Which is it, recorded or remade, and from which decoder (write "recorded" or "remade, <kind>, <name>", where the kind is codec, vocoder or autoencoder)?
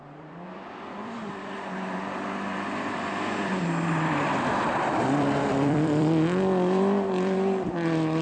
remade, vocoder, BigVGAN v2